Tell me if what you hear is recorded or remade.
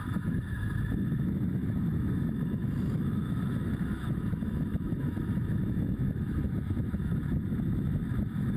remade